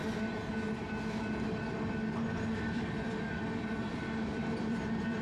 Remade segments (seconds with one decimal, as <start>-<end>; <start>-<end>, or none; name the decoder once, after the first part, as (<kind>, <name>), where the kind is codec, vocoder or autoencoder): 1.9-5.2 (vocoder, BigVGAN v2)